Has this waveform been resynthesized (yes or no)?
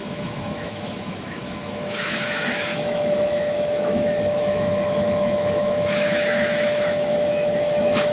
yes